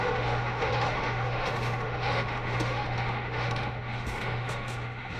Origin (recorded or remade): remade